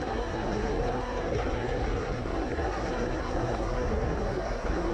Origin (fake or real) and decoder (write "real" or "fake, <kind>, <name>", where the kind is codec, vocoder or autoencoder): fake, codec, SNAC